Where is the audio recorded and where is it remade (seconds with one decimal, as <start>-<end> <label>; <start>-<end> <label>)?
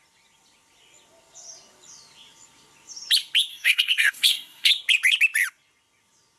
0.0-3.5 recorded; 3.5-4.7 remade; 4.7-6.4 recorded